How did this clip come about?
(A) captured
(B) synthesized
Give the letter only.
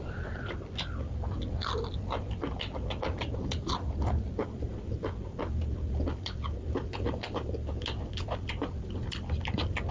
A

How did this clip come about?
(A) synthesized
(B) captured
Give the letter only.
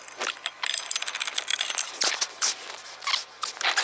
B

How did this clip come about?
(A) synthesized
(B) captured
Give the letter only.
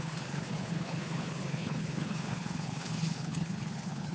A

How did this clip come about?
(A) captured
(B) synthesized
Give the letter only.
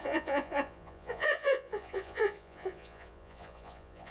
B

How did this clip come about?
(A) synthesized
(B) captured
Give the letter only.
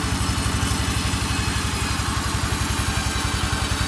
B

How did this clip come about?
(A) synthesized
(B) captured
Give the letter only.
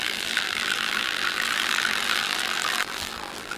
A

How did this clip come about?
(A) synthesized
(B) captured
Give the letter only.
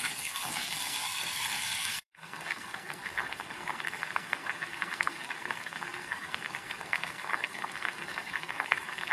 A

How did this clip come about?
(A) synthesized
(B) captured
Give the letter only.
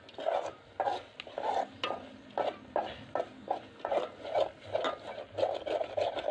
B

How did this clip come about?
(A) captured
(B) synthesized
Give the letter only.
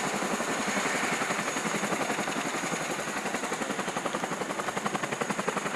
A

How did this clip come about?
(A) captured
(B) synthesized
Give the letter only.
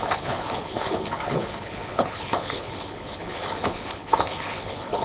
B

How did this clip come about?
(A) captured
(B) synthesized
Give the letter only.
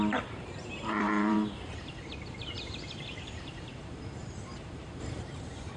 B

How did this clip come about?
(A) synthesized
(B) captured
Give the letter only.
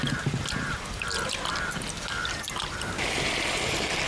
B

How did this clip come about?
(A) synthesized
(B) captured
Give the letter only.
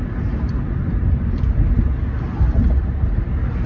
B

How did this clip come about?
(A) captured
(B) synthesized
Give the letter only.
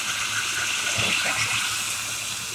A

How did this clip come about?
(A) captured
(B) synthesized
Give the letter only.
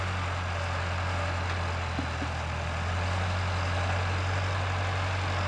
A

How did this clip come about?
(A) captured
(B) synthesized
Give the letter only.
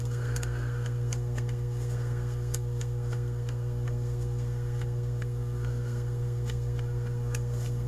B